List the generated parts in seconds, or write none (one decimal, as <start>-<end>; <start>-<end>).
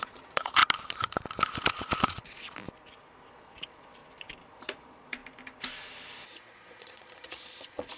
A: 0.0-0.6; 1.6-2.6; 3.3-4.0; 4.5-5.2; 6.8-8.0